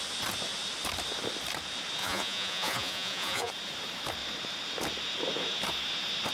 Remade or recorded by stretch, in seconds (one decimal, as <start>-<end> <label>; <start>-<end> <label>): 0.0-2.0 recorded; 2.0-3.5 remade; 3.5-6.3 recorded